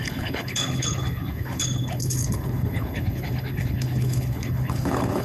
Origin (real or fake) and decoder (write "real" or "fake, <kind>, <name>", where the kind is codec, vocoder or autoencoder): fake, codec, HILCodec